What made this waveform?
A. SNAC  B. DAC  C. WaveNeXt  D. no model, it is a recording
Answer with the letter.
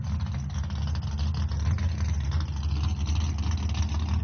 D